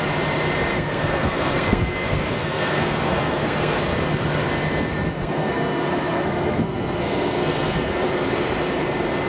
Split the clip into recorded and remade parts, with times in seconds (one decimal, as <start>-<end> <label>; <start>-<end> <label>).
0.0-0.7 recorded; 0.7-3.8 remade; 3.8-4.9 recorded; 4.9-8.1 remade; 8.1-9.3 recorded